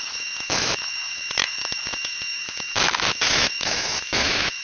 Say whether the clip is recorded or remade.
remade